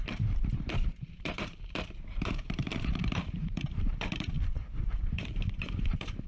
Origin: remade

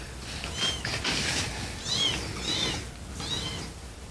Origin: recorded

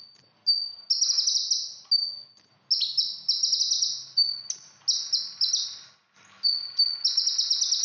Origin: recorded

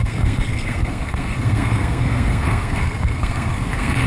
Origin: remade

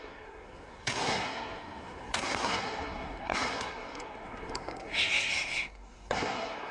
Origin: remade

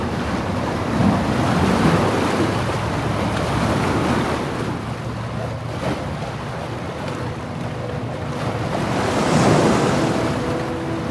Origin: recorded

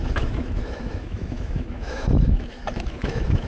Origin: remade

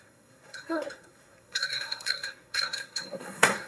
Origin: remade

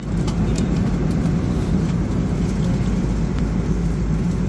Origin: recorded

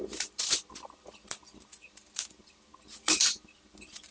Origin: remade